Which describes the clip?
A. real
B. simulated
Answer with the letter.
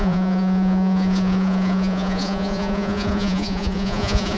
B